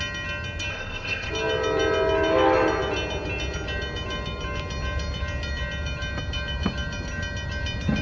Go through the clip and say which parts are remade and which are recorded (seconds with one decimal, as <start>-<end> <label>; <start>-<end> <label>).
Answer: 0.0-0.7 recorded; 0.7-1.3 remade; 1.3-8.0 recorded